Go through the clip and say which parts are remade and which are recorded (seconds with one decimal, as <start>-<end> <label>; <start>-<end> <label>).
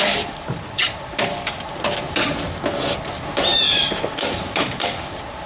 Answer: 0.0-2.0 remade; 2.0-3.8 recorded; 3.8-5.5 remade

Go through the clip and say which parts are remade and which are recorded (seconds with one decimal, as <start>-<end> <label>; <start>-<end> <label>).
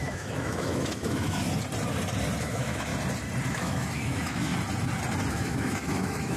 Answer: 0.0-1.4 remade; 1.4-2.4 recorded; 2.4-2.9 remade; 2.9-3.5 recorded; 3.5-4.5 remade; 4.5-5.3 recorded; 5.3-6.4 remade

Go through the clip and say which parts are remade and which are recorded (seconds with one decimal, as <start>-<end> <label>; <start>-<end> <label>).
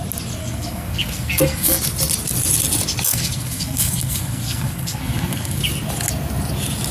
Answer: 0.0-0.4 recorded; 0.4-1.8 remade; 1.8-3.1 recorded; 3.1-5.6 remade; 5.6-6.9 recorded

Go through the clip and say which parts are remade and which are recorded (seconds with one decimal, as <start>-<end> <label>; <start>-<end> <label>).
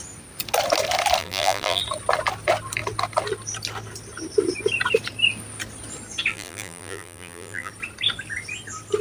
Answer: 0.0-1.2 recorded; 1.2-1.8 remade; 1.8-6.3 recorded; 6.3-7.7 remade; 7.7-9.0 recorded